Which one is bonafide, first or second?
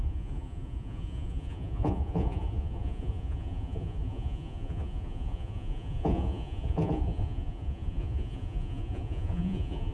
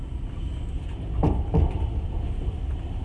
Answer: second